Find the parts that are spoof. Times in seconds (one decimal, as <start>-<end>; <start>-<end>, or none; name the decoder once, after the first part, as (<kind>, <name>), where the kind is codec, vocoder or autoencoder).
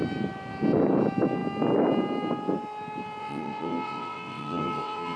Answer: 3.2-5.2 (vocoder, WaveNeXt)